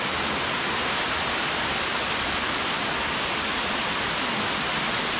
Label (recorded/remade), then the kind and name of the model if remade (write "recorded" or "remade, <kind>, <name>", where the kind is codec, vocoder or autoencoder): recorded